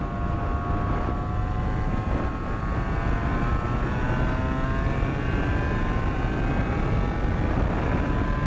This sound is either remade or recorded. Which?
recorded